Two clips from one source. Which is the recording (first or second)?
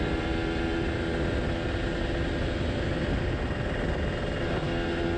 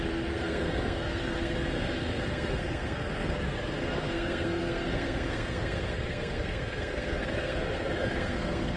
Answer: first